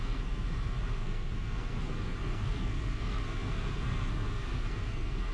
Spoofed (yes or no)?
yes